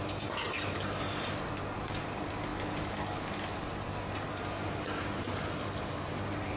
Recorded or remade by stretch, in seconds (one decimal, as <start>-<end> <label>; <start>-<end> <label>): 0.0-6.6 recorded